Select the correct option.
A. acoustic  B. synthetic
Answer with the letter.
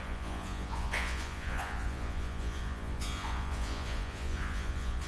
B